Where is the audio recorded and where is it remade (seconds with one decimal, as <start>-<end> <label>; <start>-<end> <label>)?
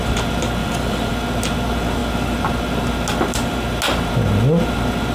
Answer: 0.0-0.6 recorded; 0.6-1.1 remade; 1.1-5.1 recorded